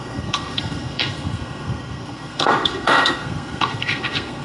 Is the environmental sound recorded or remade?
remade